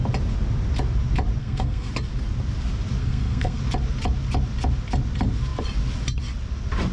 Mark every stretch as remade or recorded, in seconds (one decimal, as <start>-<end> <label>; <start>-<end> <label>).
0.0-1.4 recorded; 1.4-1.9 remade; 1.9-3.0 recorded; 3.0-3.6 remade; 3.6-6.9 recorded